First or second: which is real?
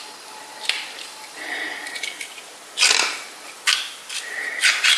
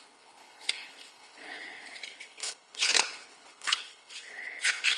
first